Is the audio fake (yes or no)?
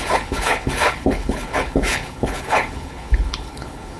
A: yes